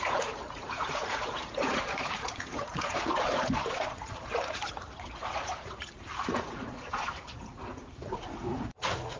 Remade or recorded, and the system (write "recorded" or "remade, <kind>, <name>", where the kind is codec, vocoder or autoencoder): remade, vocoder, Vocos